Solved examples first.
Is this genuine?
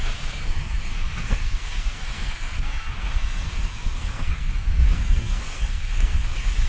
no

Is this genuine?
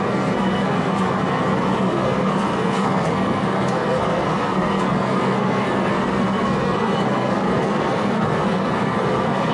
no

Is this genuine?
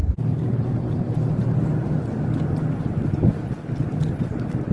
yes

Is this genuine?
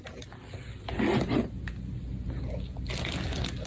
yes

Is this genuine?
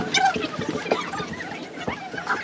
yes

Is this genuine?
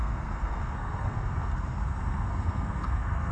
no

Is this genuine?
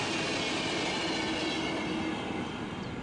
yes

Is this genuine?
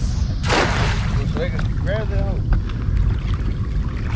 yes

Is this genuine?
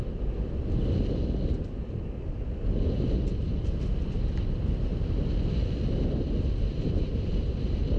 yes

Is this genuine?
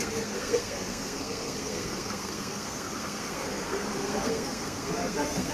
no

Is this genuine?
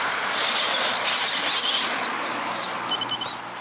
yes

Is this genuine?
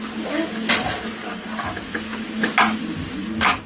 yes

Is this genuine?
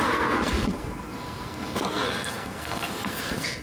no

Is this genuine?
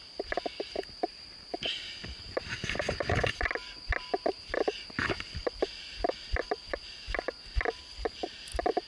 yes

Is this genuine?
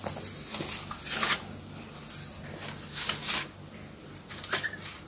yes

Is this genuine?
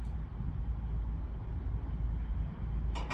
yes